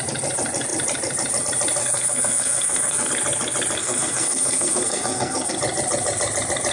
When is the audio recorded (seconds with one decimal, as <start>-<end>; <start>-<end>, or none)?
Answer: 0.0-1.8; 3.1-3.8; 5.5-6.7